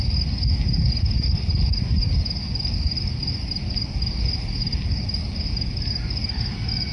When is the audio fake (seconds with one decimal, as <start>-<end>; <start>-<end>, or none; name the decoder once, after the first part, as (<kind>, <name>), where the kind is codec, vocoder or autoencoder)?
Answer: none